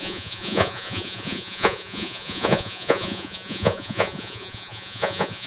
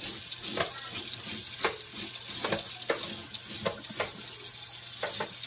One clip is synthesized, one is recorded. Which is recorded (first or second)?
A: second